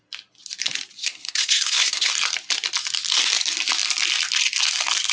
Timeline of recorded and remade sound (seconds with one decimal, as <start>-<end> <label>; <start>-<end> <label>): 0.0-1.0 recorded; 1.0-2.1 remade; 2.1-5.1 recorded